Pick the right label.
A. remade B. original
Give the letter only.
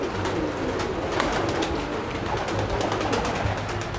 B